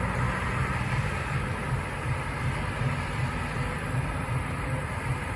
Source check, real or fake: real